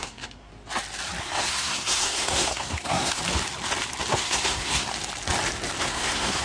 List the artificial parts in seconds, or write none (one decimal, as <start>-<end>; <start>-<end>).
0.0-0.5; 1.2-3.2; 4.1-4.9; 5.8-6.4